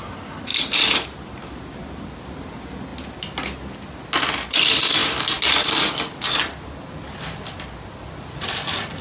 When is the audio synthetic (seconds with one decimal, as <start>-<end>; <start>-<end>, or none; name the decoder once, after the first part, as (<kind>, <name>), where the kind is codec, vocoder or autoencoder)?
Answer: none